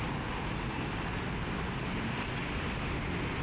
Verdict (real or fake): real